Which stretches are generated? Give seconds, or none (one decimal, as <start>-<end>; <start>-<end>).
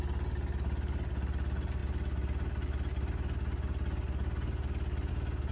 none